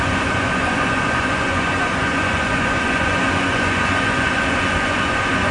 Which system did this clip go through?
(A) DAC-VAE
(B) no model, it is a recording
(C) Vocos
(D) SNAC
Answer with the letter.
C